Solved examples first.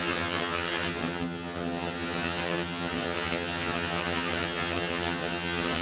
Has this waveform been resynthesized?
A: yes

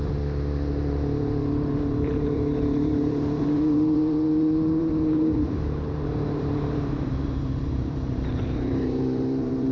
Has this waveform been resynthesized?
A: yes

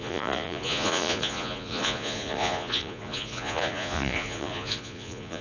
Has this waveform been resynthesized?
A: yes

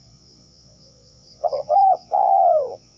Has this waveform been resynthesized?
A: yes